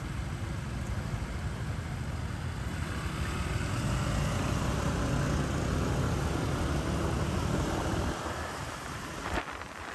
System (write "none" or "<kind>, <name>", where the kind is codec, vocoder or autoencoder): none